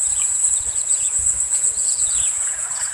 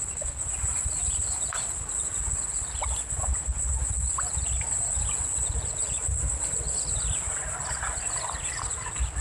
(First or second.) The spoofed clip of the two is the first